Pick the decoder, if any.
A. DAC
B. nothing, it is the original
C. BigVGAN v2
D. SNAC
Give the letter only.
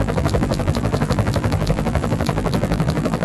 C